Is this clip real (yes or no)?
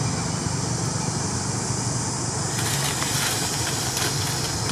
yes